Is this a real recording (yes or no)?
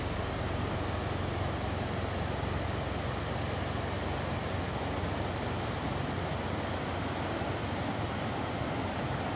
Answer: yes